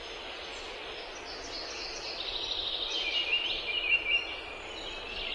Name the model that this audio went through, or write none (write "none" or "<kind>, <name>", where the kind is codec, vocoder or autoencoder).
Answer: none